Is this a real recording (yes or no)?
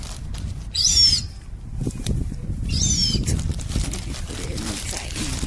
no